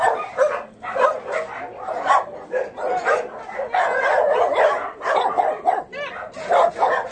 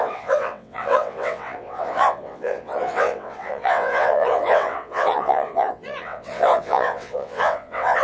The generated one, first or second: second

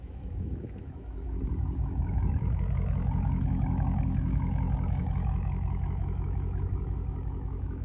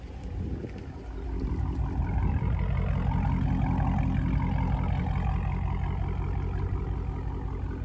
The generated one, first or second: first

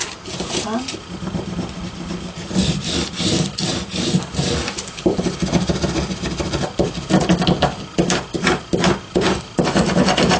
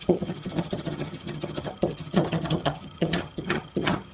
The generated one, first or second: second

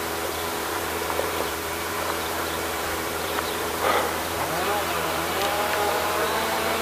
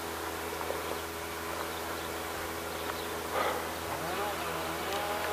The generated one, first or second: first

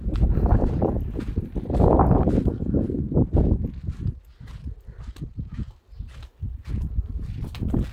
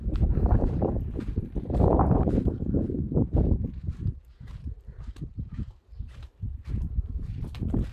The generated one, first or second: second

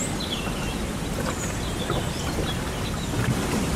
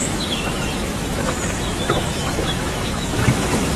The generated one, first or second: second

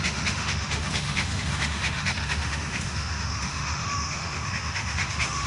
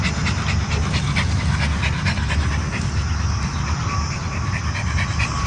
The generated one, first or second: first